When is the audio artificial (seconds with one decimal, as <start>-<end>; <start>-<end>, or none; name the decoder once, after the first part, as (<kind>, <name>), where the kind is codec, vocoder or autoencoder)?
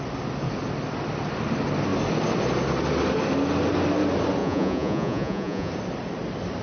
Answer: 4.4-5.7 (vocoder, Vocos)